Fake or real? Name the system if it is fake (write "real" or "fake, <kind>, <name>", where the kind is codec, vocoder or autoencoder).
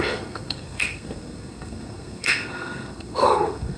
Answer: fake, codec, SNAC